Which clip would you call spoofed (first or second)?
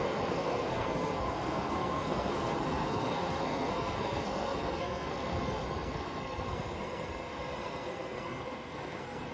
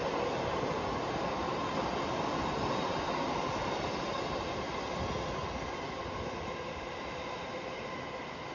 first